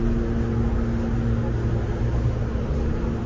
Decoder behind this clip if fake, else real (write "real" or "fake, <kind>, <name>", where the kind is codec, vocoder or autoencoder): real